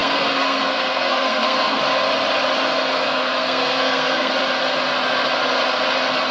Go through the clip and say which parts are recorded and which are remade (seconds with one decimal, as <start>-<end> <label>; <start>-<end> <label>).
0.0-1.8 remade; 1.8-2.9 recorded; 2.9-4.3 remade; 4.3-6.3 recorded